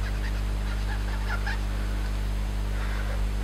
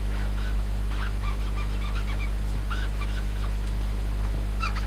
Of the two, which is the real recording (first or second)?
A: first